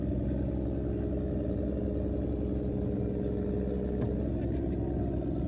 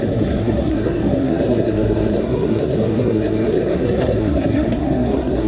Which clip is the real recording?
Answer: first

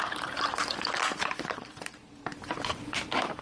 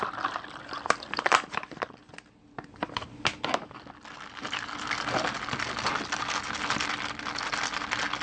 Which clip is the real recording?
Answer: second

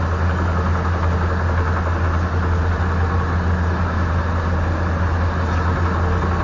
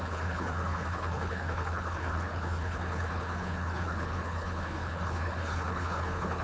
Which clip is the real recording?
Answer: first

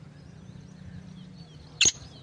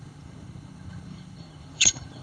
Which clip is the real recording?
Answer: first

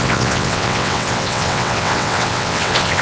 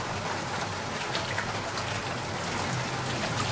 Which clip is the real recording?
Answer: second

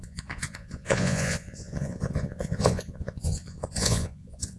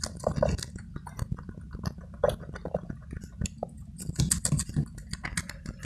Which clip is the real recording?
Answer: second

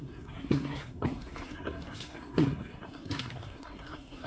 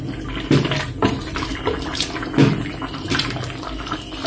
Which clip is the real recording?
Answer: second